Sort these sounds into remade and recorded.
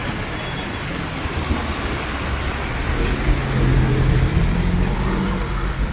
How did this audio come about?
recorded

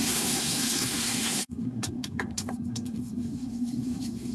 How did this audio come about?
remade